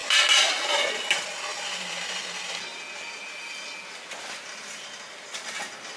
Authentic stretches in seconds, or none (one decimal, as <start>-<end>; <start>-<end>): 0.5-1.5; 2.2-6.0